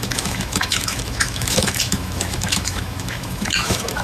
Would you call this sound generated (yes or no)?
yes